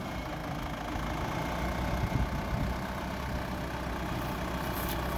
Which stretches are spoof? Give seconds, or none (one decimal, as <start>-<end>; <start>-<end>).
none

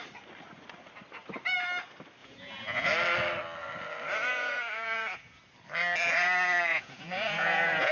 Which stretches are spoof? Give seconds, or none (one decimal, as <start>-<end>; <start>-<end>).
2.2-2.9; 4.3-5.4; 6.7-7.9

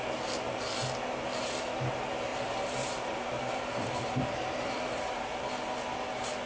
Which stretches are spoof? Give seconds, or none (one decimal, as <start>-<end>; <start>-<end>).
2.3-5.4

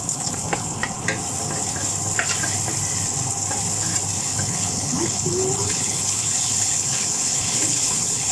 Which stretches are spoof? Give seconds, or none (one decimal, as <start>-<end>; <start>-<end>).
0.0-0.8; 4.2-8.3

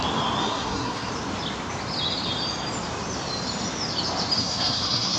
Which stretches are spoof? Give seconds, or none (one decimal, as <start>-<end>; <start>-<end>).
0.4-1.1; 4.4-5.2

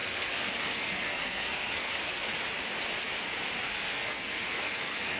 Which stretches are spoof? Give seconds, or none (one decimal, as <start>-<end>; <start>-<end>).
0.0-2.3; 3.6-5.2

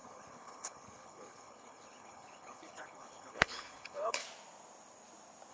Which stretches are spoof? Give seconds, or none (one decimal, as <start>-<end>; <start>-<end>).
0.0-4.2

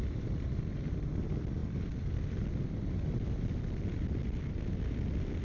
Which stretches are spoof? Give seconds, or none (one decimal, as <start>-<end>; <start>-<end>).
none